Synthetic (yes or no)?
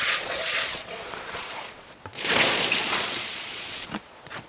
yes